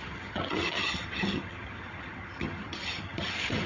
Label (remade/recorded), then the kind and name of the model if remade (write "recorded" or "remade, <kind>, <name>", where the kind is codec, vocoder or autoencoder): remade, vocoder, HiFi-GAN